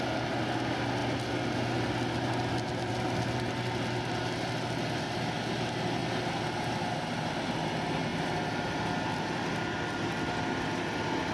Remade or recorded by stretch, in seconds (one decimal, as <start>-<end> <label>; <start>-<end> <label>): 0.0-11.3 recorded